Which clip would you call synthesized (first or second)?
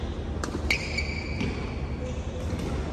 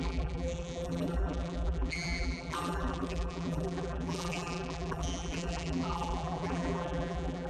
second